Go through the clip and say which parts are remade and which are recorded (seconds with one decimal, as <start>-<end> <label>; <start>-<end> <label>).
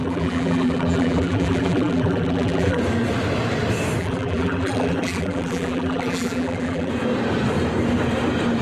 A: 0.0-2.8 remade; 2.8-4.0 recorded; 4.0-6.9 remade; 6.9-8.6 recorded